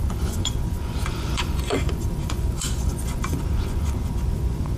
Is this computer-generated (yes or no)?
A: yes